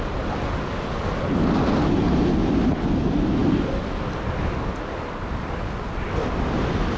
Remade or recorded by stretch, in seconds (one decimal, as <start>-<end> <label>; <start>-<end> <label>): 0.0-7.0 recorded